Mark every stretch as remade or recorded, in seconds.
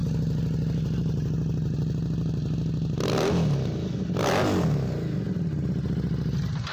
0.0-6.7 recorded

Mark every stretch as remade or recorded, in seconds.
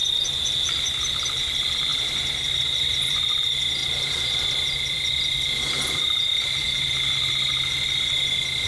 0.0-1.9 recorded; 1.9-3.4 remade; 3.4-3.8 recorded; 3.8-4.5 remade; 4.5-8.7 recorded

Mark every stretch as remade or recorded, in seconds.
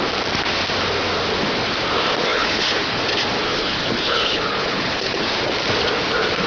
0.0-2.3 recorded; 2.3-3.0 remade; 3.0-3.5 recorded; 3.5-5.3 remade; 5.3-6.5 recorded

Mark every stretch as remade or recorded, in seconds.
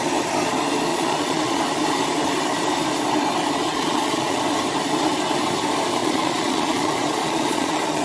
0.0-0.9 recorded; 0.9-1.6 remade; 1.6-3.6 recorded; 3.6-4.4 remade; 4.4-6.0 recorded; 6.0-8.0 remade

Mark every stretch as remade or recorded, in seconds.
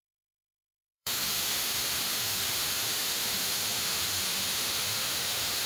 0.0-5.7 remade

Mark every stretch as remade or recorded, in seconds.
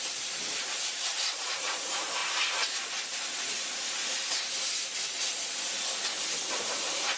0.0-2.2 remade; 2.2-6.5 recorded; 6.5-7.2 remade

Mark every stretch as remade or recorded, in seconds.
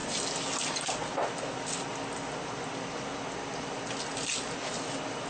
0.0-5.3 recorded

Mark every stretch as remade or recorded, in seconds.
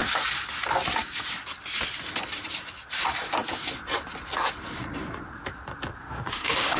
0.0-6.0 recorded; 6.0-6.8 remade